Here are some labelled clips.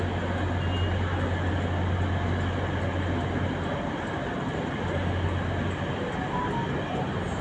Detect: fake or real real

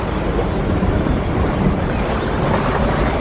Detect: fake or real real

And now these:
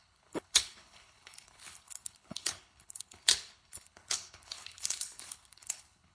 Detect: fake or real fake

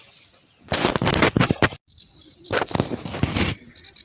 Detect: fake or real real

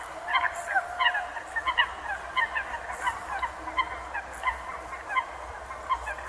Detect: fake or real real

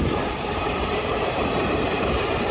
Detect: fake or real fake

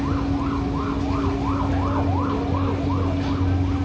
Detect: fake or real real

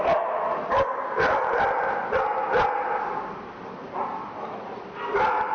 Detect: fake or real real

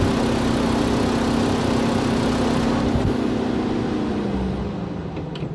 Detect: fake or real real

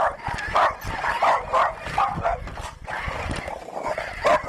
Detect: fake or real real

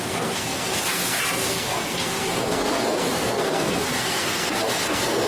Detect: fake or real fake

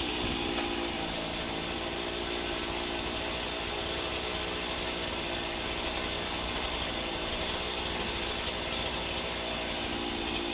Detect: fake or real real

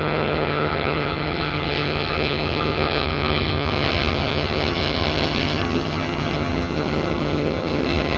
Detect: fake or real fake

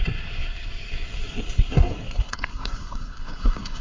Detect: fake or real fake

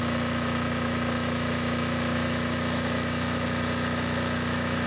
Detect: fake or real fake